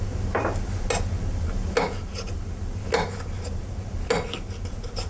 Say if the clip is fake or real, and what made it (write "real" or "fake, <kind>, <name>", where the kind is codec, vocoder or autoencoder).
real